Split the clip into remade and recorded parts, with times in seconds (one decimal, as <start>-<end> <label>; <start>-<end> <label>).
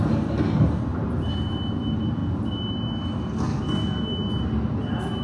0.0-5.2 recorded